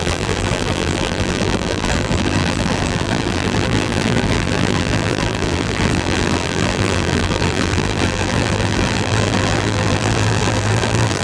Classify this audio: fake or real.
fake